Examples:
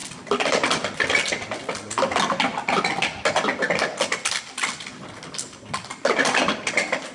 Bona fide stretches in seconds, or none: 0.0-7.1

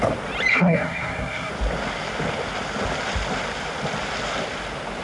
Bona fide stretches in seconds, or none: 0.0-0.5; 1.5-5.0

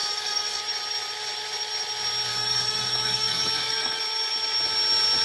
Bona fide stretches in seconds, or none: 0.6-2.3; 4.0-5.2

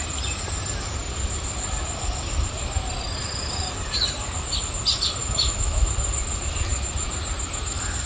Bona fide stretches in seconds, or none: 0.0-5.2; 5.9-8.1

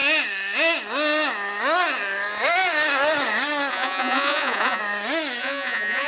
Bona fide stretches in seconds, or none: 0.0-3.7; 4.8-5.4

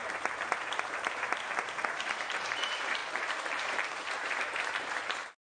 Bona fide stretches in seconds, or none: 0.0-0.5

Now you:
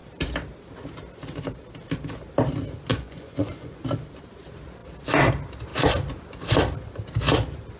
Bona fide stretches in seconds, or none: 0.0-2.9; 3.8-7.8